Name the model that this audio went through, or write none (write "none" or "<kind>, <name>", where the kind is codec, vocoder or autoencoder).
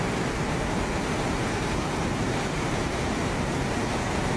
none